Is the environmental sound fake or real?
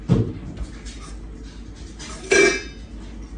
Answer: real